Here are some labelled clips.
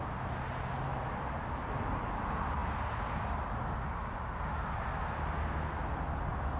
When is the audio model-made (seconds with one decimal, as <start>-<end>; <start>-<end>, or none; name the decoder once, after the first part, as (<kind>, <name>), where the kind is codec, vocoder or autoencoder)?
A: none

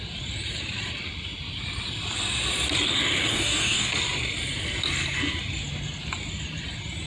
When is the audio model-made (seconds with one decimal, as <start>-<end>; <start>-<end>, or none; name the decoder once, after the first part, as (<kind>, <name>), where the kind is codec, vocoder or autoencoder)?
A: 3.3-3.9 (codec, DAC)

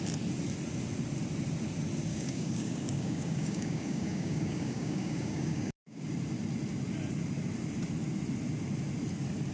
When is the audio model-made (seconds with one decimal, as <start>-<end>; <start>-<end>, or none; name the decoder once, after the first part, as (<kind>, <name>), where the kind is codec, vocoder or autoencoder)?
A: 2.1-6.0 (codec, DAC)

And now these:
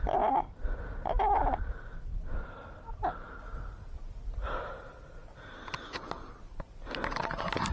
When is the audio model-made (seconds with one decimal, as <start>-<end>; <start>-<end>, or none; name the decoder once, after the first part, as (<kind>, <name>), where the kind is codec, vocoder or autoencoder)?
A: none

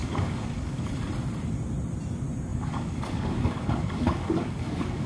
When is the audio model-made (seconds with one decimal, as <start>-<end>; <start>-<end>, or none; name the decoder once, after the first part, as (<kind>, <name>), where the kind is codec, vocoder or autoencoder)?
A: 0.0-0.9 (codec, DAC); 2.5-5.1

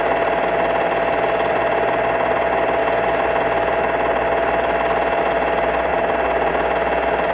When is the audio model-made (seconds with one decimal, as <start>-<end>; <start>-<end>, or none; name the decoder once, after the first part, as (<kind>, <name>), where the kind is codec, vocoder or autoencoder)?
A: none

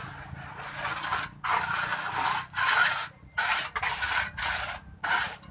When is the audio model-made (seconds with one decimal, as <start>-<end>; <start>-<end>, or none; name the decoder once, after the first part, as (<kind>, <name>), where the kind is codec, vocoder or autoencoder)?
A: none